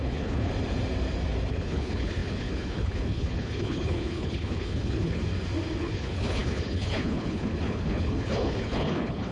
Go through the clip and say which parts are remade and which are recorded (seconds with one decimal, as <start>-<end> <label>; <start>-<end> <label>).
0.0-0.5 remade; 0.5-1.5 recorded; 1.5-5.2 remade; 5.2-5.8 recorded; 5.8-9.3 remade